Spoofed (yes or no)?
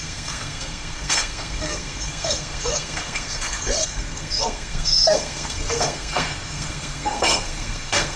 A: yes